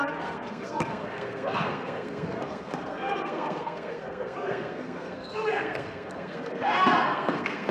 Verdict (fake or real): fake